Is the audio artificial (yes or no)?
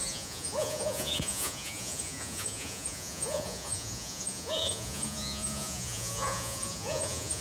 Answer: yes